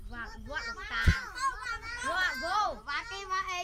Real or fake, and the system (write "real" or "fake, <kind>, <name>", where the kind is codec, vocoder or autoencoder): real